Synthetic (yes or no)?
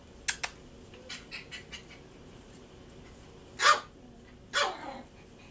no